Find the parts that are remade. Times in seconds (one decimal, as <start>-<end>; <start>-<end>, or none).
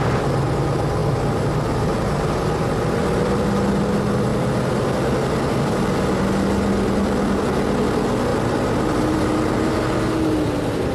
1.0-3.5; 8.3-9.7